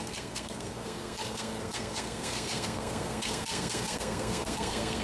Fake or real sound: fake